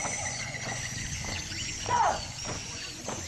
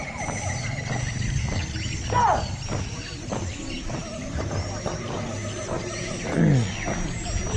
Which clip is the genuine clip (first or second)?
second